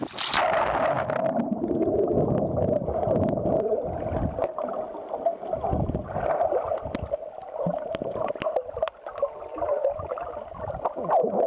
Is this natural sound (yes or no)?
yes